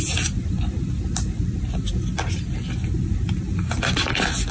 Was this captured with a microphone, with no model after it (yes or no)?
yes